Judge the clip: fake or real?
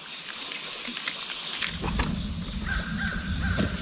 real